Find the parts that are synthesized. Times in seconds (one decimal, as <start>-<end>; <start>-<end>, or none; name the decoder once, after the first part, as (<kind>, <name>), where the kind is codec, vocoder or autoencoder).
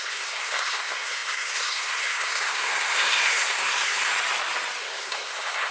0.0-4.1 (codec, SNAC); 4.8-5.7